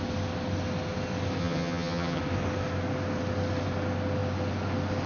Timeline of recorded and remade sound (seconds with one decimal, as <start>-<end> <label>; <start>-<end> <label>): 0.0-1.4 recorded; 1.4-2.2 remade; 2.2-5.1 recorded